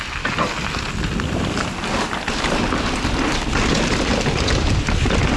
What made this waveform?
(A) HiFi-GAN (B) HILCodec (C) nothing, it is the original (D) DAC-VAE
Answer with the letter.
C